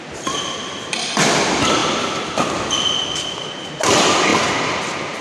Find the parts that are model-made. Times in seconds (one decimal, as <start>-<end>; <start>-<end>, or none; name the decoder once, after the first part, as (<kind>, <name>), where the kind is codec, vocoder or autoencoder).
1.8-3.5 (vocoder, BigVGAN v2)